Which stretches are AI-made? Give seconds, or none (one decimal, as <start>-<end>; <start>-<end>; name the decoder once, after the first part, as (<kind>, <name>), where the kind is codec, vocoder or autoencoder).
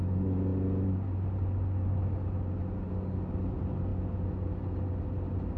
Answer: none